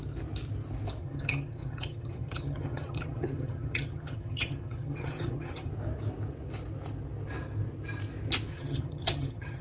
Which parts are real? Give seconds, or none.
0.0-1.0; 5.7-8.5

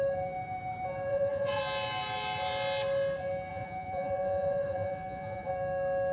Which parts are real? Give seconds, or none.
0.0-1.1; 1.6-3.5; 5.5-6.1

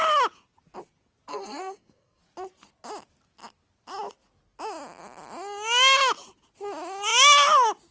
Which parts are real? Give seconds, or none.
0.0-1.3; 2.2-7.9

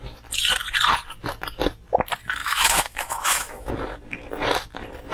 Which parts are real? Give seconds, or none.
0.0-2.4; 3.7-5.1

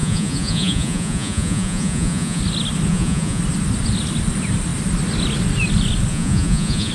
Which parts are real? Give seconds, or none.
2.4-2.9; 3.4-6.1